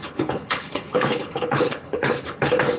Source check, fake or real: fake